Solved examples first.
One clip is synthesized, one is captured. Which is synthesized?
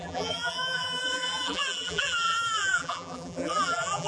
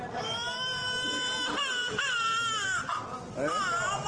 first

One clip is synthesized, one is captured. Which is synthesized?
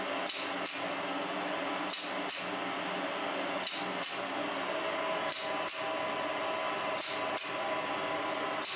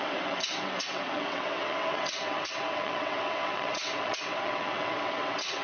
second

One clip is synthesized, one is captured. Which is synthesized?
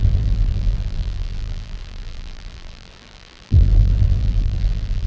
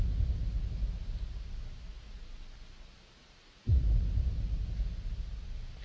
first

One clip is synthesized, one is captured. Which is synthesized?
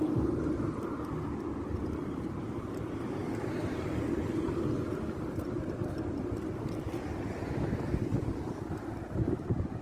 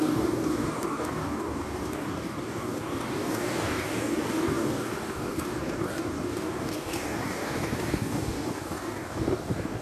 second